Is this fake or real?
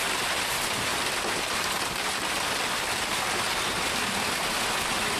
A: real